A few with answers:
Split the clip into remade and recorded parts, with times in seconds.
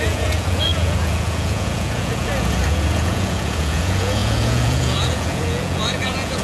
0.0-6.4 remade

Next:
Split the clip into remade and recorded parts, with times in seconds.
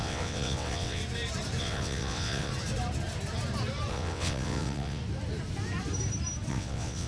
0.0-1.0 remade; 1.0-1.6 recorded; 1.6-2.5 remade; 2.5-3.9 recorded; 3.9-5.0 remade; 5.0-6.5 recorded; 6.5-7.1 remade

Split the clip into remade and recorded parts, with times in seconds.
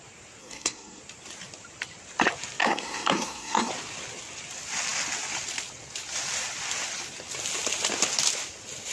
0.0-0.4 recorded; 0.4-1.0 remade; 1.0-2.6 recorded; 2.6-3.7 remade; 3.7-8.9 recorded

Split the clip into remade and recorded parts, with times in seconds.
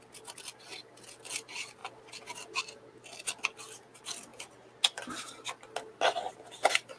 0.0-7.0 recorded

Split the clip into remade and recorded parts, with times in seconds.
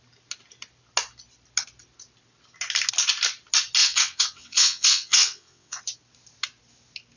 0.0-3.8 recorded; 3.8-5.8 remade; 5.8-7.2 recorded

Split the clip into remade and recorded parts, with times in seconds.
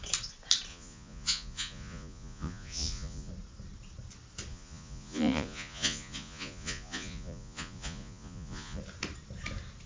0.0-0.7 recorded; 0.7-3.3 remade; 3.3-4.5 recorded; 4.5-8.8 remade; 8.8-9.9 recorded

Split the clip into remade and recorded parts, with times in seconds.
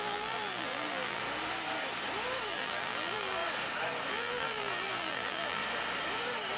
0.0-1.2 remade; 1.2-2.5 recorded; 2.5-3.4 remade; 3.4-4.1 recorded; 4.1-5.6 remade; 5.6-6.6 recorded